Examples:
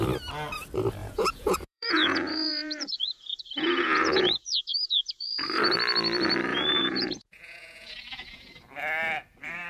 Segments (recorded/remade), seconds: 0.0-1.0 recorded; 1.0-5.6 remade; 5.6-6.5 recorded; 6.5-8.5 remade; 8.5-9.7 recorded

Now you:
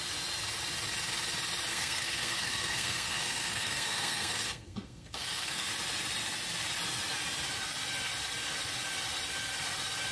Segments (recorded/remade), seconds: 0.0-1.7 recorded; 1.7-5.7 remade; 5.7-10.1 recorded

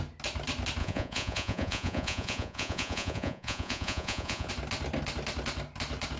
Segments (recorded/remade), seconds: 0.0-0.8 recorded; 0.8-4.5 remade; 4.5-6.2 recorded

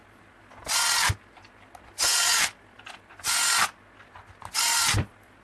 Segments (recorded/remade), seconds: 0.0-5.4 recorded

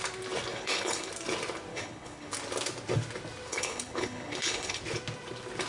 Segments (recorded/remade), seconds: 0.0-0.5 recorded; 0.5-1.1 remade; 1.1-1.7 recorded; 1.7-2.3 remade; 2.3-3.5 recorded; 3.5-4.8 remade; 4.8-5.7 recorded

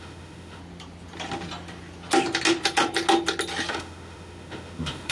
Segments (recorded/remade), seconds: 0.0-0.6 remade; 0.6-3.7 recorded; 3.7-5.1 remade

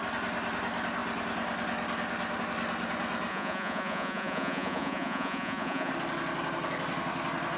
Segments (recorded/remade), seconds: 0.0-3.3 recorded; 3.3-5.9 remade; 5.9-7.6 recorded